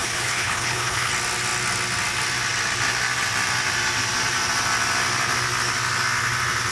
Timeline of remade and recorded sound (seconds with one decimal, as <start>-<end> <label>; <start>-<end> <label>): 0.0-1.1 remade; 1.1-6.7 recorded